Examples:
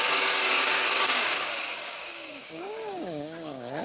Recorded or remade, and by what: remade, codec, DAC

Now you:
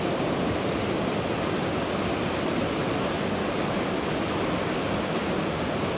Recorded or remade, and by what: recorded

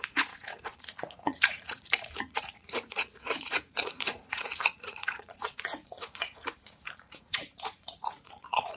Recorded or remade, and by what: remade, vocoder, Vocos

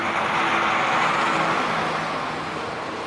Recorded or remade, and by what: recorded